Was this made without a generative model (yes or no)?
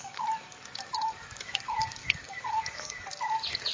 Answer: no